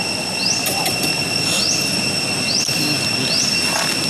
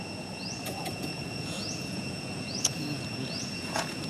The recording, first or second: first